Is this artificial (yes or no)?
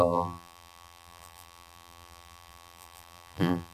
yes